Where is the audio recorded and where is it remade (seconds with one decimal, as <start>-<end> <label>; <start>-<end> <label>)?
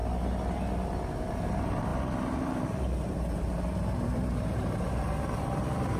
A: 0.0-1.3 recorded; 1.3-6.0 remade